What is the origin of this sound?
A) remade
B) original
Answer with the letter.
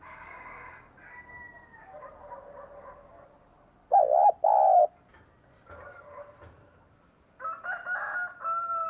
B